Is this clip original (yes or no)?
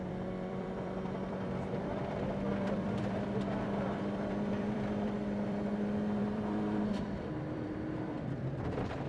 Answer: no